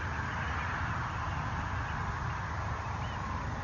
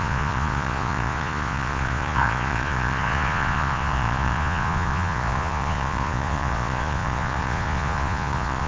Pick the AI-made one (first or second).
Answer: second